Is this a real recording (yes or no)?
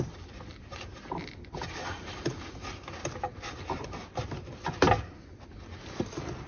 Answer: yes